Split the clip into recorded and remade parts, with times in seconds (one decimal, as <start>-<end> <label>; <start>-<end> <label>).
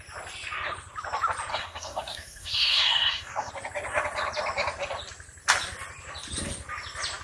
0.0-1.5 recorded; 1.5-3.5 remade; 3.5-7.2 recorded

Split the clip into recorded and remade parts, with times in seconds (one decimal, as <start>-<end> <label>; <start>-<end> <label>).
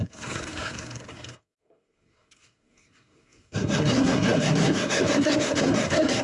0.0-6.2 remade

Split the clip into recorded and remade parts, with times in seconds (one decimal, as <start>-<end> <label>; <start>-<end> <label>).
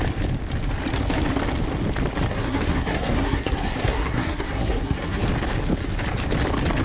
0.0-2.3 recorded; 2.3-5.2 remade; 5.2-6.8 recorded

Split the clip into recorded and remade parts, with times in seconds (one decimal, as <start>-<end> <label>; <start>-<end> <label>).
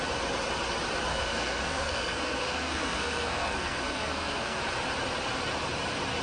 0.0-1.1 recorded; 1.1-4.6 remade; 4.6-6.2 recorded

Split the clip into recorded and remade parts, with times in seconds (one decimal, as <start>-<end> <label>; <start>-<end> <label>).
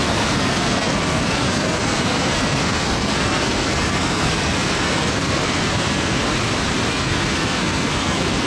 0.0-6.2 remade; 6.2-6.9 recorded; 6.9-8.5 remade